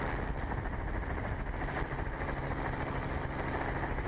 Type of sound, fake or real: real